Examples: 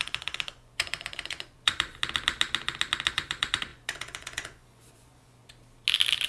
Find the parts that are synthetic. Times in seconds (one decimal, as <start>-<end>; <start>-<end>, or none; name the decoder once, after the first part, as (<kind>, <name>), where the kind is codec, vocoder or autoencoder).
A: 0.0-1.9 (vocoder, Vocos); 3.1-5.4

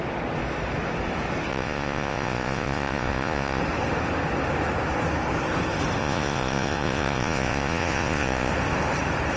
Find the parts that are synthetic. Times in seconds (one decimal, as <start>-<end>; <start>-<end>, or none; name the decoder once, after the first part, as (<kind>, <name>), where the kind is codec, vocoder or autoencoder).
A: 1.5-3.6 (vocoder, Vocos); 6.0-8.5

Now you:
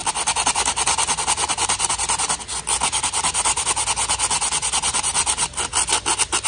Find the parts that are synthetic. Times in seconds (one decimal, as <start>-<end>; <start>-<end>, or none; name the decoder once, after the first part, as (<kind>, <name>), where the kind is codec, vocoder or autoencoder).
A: none

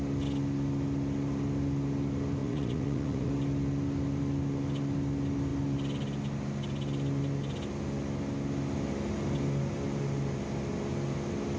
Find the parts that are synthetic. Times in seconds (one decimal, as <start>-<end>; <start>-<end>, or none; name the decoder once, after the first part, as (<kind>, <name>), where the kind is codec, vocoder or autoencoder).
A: 2.4-3.3 (vocoder, Vocos)